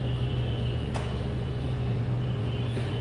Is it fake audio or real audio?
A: fake